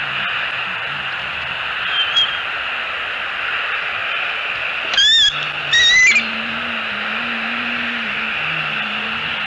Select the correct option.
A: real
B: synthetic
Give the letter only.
A